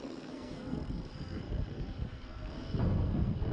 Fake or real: fake